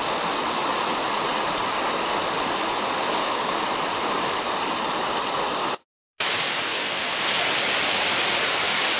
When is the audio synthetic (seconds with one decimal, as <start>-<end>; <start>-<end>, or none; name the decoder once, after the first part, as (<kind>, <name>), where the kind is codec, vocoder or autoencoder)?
3.1-3.7 (codec, DAC); 6.7-7.3